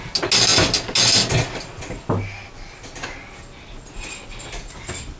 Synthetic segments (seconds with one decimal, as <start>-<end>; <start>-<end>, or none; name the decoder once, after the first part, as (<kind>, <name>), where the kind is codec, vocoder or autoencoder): none